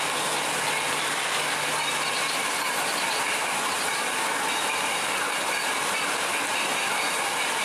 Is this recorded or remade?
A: recorded